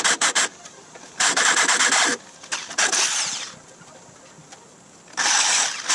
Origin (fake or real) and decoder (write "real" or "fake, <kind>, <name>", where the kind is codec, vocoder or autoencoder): real